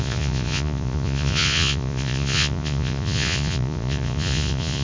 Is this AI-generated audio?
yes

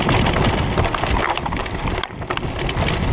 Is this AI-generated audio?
no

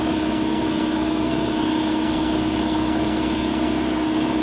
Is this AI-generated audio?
yes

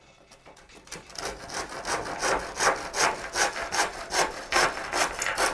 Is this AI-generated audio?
no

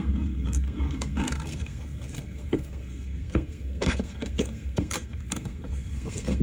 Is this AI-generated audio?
yes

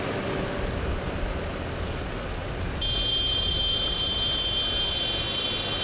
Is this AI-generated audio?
no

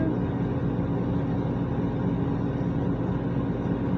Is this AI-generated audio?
no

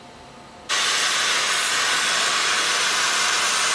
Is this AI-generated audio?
no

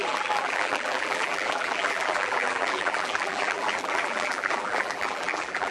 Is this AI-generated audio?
yes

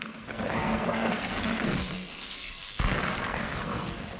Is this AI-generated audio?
yes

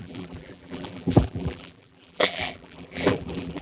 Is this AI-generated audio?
yes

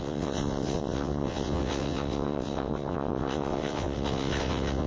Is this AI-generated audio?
yes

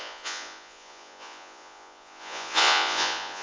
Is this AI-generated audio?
yes